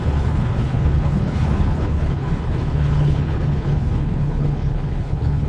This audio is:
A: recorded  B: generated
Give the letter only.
B